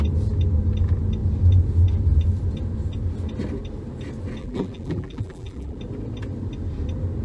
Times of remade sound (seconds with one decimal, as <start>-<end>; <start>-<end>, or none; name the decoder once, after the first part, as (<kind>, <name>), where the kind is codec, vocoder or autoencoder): 4.4-5.8 (vocoder, BigVGAN v2)